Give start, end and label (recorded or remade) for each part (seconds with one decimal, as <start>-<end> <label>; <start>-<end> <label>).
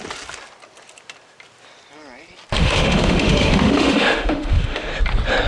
0.0-2.6 recorded; 2.6-4.9 remade; 4.9-5.5 recorded